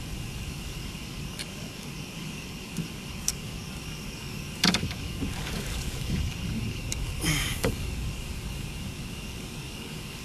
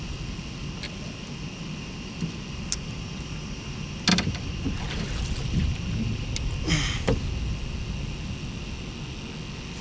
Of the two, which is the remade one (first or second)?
first